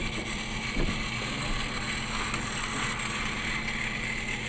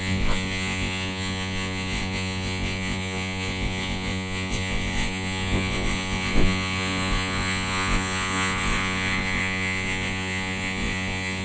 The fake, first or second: second